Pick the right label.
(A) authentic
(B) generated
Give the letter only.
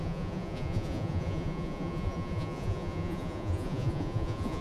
B